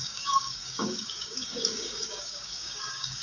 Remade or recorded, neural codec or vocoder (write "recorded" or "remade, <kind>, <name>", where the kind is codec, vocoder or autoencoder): remade, codec, DAC